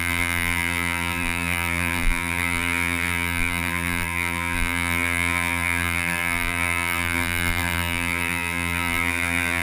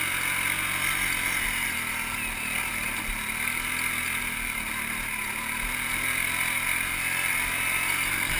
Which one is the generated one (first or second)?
first